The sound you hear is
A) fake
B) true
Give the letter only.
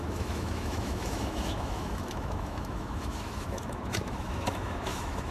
A